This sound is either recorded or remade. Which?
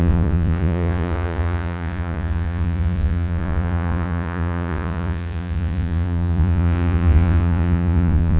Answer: remade